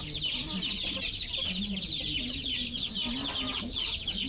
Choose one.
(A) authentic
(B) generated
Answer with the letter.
A